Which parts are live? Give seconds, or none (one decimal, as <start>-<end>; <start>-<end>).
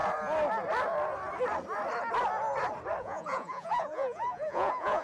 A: 0.0-3.0